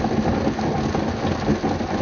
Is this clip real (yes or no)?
yes